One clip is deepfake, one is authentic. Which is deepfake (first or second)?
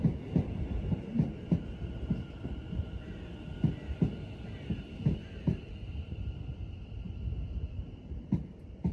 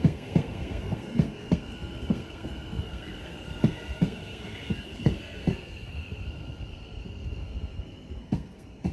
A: second